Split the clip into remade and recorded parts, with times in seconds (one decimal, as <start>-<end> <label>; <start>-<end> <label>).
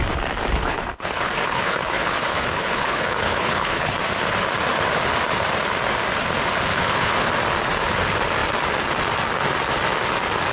0.0-0.6 recorded; 0.6-3.9 remade; 3.9-6.7 recorded; 6.7-7.3 remade; 7.3-10.5 recorded